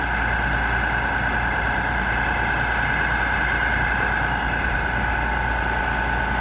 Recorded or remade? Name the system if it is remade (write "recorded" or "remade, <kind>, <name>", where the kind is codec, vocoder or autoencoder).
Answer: recorded